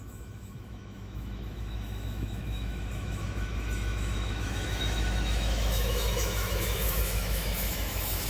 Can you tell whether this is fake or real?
fake